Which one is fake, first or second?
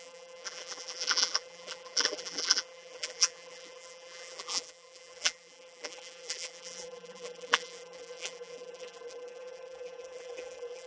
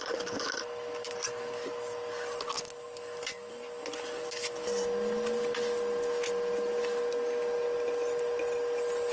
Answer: first